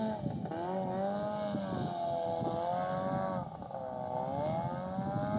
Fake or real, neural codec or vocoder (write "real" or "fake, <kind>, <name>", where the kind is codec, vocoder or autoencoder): real